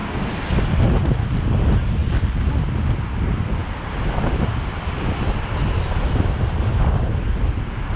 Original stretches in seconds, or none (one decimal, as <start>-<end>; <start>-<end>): 0.0-8.0